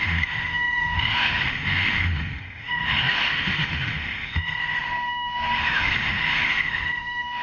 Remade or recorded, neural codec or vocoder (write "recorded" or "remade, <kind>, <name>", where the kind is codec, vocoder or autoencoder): remade, autoencoder, DAC-VAE